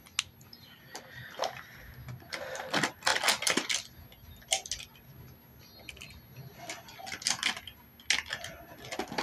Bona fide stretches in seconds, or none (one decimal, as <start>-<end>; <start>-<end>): 0.0-9.2